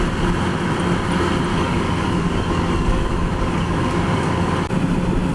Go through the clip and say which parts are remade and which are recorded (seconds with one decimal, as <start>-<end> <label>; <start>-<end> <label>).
0.0-1.5 recorded; 1.5-4.7 remade; 4.7-5.3 recorded